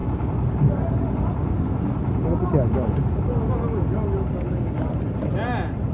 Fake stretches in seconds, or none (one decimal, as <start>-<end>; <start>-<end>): none